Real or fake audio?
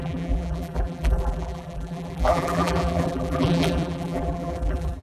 fake